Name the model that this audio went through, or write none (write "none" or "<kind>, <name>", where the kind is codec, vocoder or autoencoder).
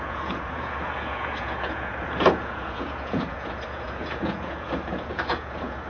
vocoder, Vocos